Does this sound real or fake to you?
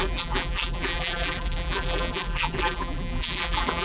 fake